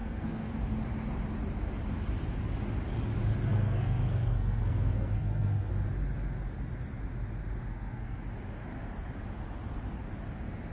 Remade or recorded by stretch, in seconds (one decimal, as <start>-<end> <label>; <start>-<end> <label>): 0.0-0.5 remade; 0.5-3.5 recorded; 3.5-5.7 remade; 5.7-7.7 recorded; 7.7-8.2 remade; 8.2-10.7 recorded